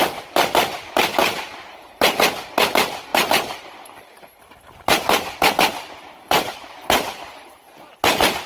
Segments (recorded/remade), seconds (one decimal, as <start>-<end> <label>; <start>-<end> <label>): 0.0-1.2 recorded; 1.2-2.3 remade; 2.3-3.1 recorded; 3.1-7.5 remade; 7.5-8.5 recorded